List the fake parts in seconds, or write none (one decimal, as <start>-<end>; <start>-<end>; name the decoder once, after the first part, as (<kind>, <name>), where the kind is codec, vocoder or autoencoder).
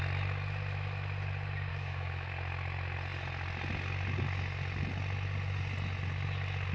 1.7-2.3 (autoencoder, DAC-VAE)